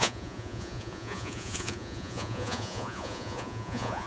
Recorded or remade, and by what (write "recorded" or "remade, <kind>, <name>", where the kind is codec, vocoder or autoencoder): remade, vocoder, Vocos